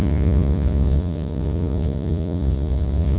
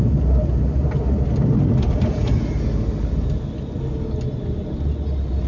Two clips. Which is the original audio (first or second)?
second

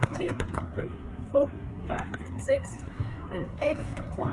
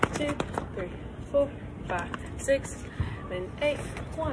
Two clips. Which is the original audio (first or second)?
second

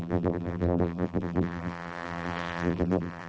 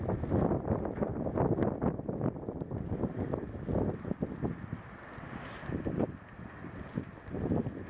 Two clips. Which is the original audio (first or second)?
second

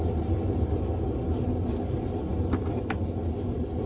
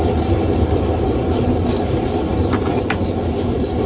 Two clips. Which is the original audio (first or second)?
first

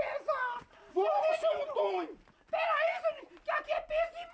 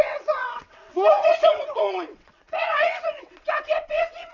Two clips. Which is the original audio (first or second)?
first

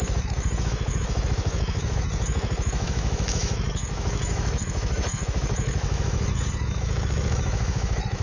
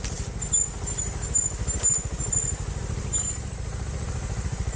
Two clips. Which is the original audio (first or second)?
second